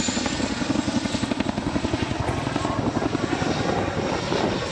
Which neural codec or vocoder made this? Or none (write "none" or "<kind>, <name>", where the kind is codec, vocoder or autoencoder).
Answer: none